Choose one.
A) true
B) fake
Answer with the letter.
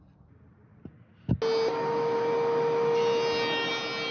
A